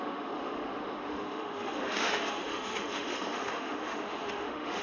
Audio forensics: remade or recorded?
remade